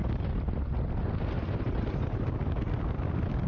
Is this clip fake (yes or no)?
no